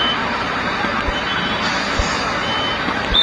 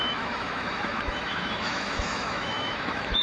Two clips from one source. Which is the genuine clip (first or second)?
first